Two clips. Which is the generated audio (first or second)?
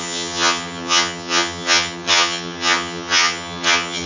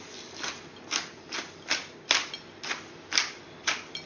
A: first